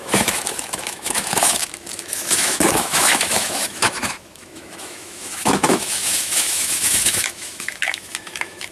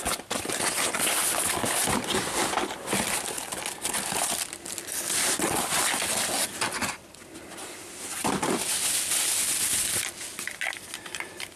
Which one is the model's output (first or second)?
first